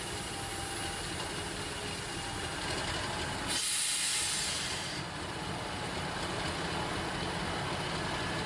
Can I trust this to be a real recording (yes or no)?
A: yes